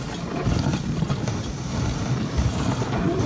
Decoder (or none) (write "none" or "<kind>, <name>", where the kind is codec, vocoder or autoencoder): none